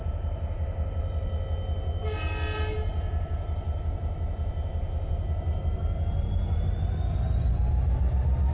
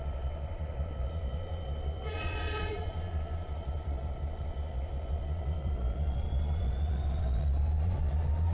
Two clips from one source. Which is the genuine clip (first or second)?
first